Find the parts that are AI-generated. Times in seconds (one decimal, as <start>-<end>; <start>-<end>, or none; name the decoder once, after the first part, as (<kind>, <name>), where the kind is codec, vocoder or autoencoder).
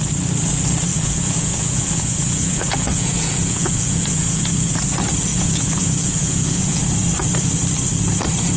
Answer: 0.9-4.8 (vocoder, Vocos); 5.3-6.8